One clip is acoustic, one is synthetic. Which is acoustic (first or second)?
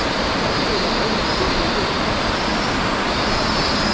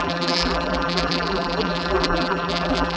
first